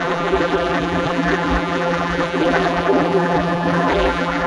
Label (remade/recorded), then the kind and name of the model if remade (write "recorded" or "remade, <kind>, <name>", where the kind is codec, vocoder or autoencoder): remade, vocoder, BigVGAN v2